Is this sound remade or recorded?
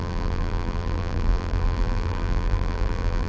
remade